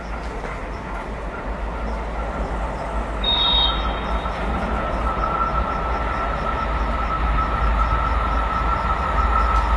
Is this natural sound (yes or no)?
yes